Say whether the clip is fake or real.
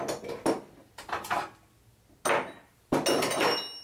real